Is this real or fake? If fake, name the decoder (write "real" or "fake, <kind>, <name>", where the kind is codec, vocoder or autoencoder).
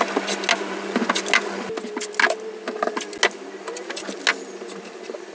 real